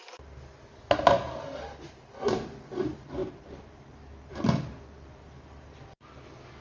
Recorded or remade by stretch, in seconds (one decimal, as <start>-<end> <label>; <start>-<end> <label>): 0.0-6.6 recorded